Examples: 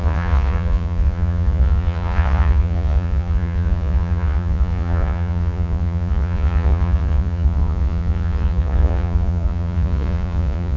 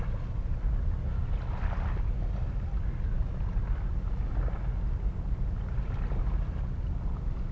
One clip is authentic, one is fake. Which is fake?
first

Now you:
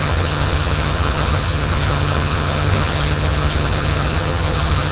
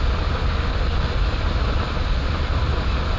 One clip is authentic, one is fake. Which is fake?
first